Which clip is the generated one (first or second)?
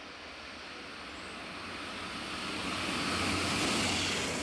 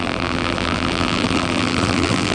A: second